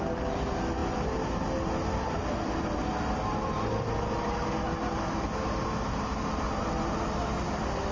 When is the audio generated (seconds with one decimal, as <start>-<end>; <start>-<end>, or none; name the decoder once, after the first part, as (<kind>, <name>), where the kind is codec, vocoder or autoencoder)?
none